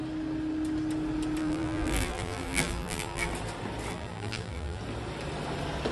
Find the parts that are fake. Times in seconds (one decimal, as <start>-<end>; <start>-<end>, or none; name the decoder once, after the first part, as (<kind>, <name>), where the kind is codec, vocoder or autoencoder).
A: 1.4-3.3 (vocoder, BigVGAN v2); 3.9-4.8